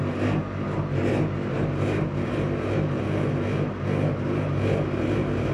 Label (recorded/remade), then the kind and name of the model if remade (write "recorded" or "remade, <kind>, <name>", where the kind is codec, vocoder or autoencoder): recorded